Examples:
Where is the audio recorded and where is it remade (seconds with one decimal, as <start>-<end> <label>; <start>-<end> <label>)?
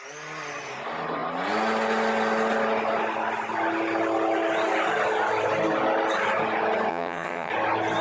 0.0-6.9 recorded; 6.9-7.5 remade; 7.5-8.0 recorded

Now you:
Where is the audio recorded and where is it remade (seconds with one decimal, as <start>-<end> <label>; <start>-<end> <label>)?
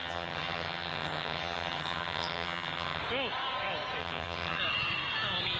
0.0-3.0 remade; 3.0-4.0 recorded; 4.0-4.6 remade; 4.6-5.6 recorded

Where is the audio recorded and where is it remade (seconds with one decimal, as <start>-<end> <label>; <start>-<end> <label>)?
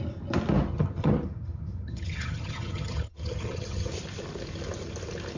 0.0-0.7 recorded; 0.7-3.9 remade; 3.9-5.4 recorded